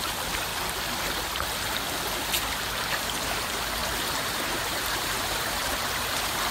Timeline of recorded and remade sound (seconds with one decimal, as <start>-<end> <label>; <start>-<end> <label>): 0.0-0.5 remade; 0.5-2.9 recorded; 2.9-6.5 remade